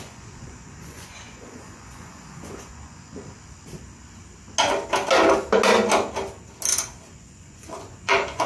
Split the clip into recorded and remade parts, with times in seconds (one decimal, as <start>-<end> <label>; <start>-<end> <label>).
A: 0.0-3.1 remade; 3.1-7.1 recorded; 7.1-8.5 remade